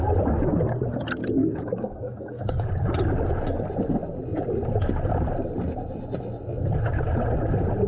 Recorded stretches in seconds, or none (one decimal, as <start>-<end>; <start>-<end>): 0.0-1.4; 2.7-7.9